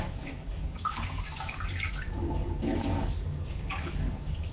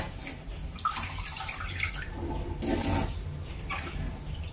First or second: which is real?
second